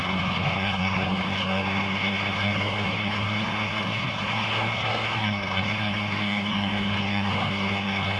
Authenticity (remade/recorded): remade